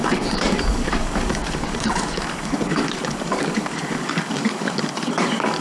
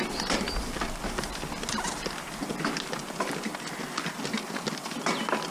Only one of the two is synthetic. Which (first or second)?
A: first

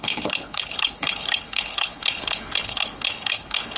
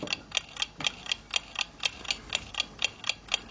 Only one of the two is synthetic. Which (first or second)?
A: first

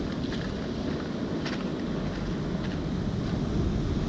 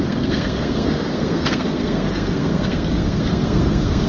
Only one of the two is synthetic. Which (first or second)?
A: second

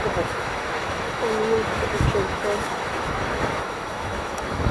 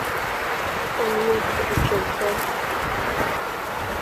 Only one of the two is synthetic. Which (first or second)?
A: first